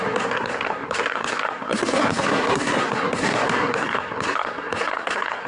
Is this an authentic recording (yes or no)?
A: no